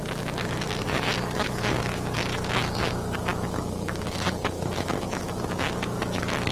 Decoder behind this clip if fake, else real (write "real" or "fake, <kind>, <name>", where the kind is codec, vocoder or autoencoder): fake, autoencoder, DAC-VAE